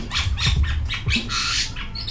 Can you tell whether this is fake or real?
real